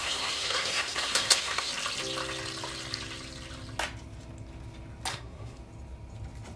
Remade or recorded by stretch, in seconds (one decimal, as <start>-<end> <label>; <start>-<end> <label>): 0.0-1.7 remade; 1.7-5.1 recorded; 5.1-5.6 remade; 5.6-6.6 recorded